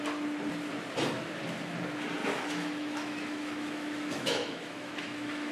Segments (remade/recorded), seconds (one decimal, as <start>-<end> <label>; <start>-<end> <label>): 0.0-2.2 recorded; 2.2-5.5 remade